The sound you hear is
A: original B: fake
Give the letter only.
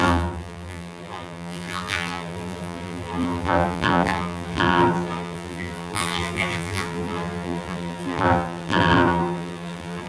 B